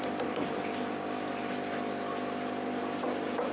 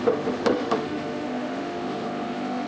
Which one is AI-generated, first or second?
second